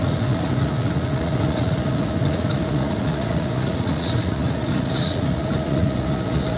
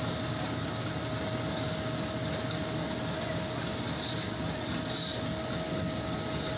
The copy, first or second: first